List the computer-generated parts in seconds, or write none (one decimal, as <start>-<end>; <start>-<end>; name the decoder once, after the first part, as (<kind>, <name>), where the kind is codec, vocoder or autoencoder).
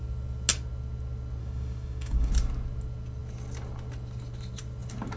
1.4-2.3 (codec, DAC)